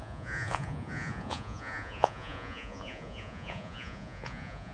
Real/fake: fake